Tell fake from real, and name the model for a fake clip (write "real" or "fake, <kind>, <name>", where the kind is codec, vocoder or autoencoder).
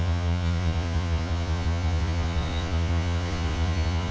fake, vocoder, Vocos